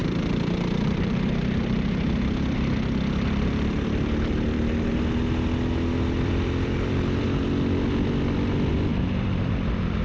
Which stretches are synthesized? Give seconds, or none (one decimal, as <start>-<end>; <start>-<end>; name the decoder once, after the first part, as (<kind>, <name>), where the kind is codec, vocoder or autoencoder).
0.0-4.9 (vocoder, BigVGAN v2); 5.9-7.5; 8.9-9.5

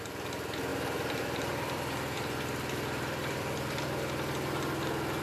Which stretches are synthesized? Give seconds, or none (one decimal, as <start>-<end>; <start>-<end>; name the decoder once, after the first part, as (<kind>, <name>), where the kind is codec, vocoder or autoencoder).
0.7-3.8 (vocoder, BigVGAN v2)

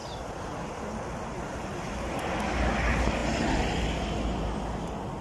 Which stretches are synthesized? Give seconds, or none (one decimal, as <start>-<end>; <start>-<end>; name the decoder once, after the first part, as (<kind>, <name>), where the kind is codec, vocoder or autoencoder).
1.3-1.9 (vocoder, BigVGAN v2)

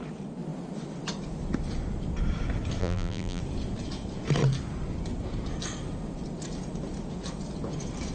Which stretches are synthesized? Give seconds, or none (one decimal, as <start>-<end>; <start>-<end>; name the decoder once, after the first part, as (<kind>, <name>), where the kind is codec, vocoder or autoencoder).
2.8-3.4 (vocoder, BigVGAN v2)